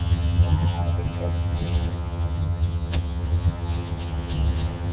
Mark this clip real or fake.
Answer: fake